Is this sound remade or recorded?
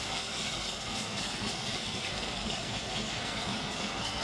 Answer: remade